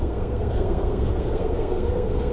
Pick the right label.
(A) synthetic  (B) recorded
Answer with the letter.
A